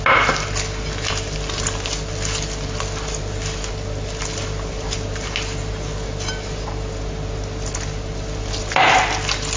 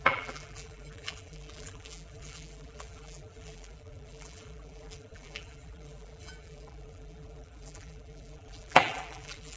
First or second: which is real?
first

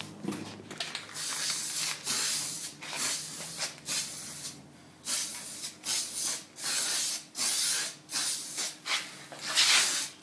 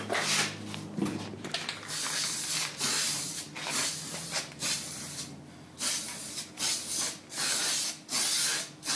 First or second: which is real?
first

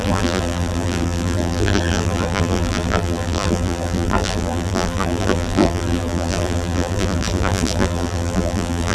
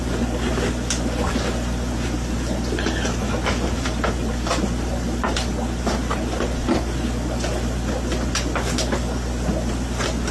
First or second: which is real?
second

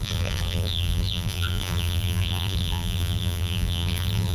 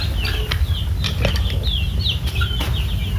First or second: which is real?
second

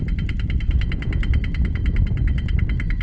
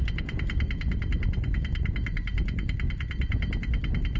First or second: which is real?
second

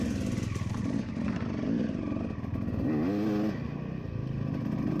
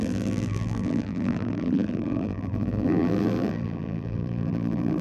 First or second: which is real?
first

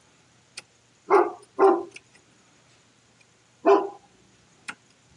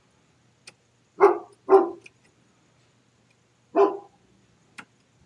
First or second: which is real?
second